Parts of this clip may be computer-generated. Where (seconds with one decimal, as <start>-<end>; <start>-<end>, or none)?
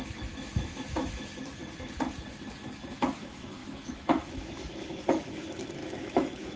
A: 0.0-1.6; 2.9-6.6